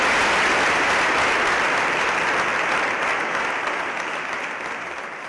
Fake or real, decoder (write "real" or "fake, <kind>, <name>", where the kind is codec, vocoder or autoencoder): real